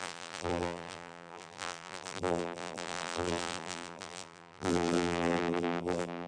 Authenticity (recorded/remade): remade